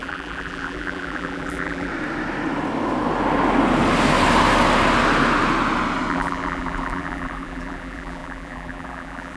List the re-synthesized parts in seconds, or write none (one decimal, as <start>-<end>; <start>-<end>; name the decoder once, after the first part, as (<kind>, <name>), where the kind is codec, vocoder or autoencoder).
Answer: 0.0-1.9 (vocoder, BigVGAN v2); 6.1-9.4